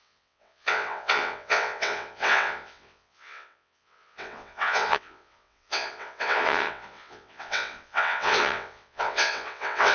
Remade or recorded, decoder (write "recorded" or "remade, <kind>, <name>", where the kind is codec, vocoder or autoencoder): remade, vocoder, WaveNeXt